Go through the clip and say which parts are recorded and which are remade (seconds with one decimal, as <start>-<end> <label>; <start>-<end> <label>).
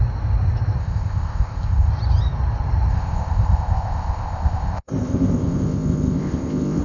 0.0-0.8 recorded; 0.8-1.9 remade; 1.9-2.9 recorded; 2.9-6.8 remade